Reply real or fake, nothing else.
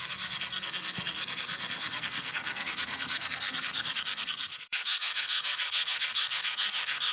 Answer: fake